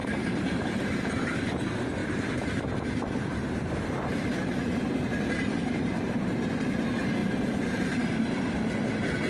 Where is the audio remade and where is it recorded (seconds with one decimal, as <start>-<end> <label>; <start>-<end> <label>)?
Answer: 0.0-1.1 remade; 1.1-2.0 recorded; 2.0-6.3 remade; 6.3-7.2 recorded; 7.2-8.4 remade; 8.4-9.3 recorded